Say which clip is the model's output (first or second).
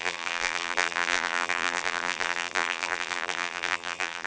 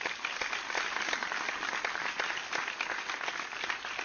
first